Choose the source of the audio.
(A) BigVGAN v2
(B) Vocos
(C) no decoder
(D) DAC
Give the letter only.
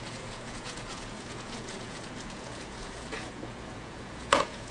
B